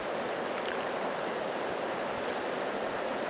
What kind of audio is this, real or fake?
fake